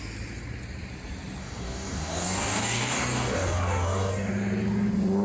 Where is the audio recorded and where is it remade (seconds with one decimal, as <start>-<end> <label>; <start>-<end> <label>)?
0.0-1.4 recorded; 1.4-4.3 remade; 4.3-5.2 recorded